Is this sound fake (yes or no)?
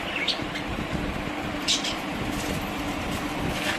no